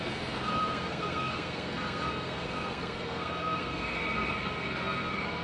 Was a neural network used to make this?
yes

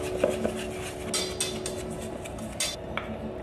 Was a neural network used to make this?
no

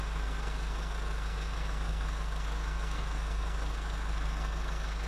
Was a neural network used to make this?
yes